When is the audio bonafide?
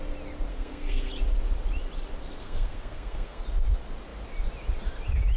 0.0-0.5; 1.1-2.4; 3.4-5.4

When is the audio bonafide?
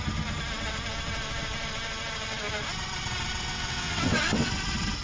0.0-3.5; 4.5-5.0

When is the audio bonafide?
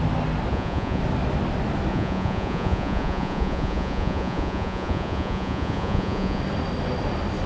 0.0-0.5; 1.0-1.9; 6.4-7.5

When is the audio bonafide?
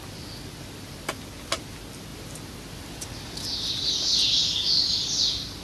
0.0-5.6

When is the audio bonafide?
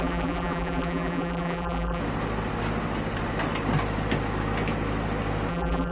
2.0-5.5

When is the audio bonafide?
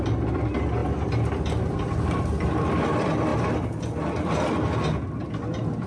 0.0-5.9